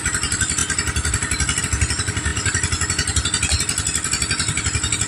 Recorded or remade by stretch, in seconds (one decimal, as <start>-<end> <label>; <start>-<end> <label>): 0.0-2.3 remade; 2.3-5.1 recorded